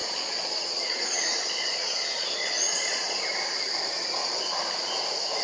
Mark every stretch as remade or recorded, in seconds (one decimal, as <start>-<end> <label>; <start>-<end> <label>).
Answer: 0.0-3.2 remade; 3.2-3.9 recorded; 3.9-4.4 remade; 4.4-5.4 recorded